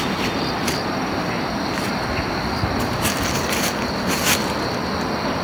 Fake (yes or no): no